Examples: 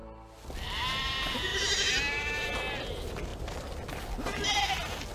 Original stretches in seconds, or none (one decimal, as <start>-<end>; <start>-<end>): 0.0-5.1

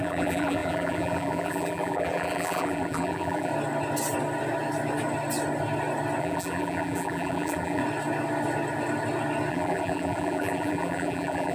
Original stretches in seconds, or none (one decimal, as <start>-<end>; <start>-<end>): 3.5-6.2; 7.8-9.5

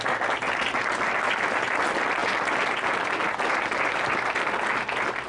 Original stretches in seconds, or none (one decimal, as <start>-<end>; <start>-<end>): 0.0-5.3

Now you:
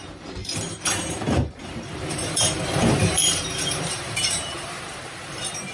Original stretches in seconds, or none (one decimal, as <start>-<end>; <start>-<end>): none